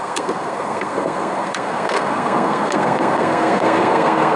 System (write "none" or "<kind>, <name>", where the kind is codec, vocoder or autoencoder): codec, SNAC